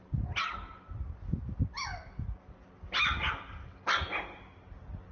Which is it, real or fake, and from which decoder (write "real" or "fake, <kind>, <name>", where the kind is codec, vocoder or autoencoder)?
real